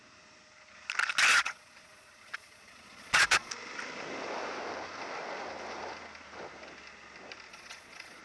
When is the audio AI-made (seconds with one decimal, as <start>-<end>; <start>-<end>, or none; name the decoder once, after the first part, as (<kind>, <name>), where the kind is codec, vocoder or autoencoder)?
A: 1.3-3.5 (vocoder, Vocos); 7.5-8.2